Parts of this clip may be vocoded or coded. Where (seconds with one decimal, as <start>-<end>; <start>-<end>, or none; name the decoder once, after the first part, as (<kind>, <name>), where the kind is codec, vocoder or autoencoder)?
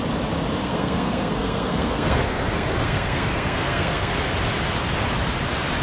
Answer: 0.6-4.1 (codec, SNAC)